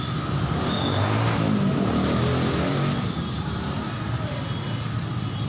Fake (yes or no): no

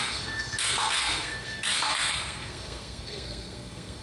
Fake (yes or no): yes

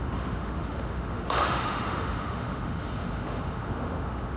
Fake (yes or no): yes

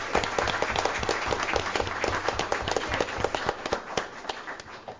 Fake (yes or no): no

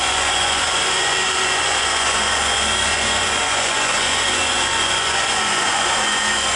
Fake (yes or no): yes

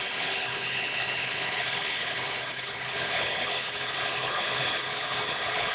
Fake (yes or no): yes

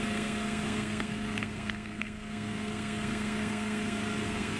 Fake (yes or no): yes